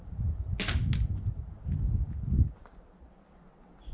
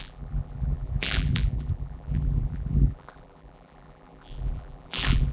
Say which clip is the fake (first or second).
second